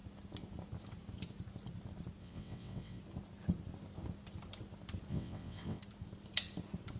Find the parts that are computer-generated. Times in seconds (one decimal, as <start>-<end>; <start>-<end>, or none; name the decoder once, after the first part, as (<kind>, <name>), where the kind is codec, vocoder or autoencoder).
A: 2.2-3.0 (vocoder, WaveNeXt); 5.1-5.8